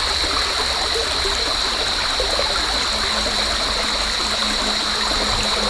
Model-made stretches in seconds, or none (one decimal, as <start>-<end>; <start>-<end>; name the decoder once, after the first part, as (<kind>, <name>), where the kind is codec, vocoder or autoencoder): none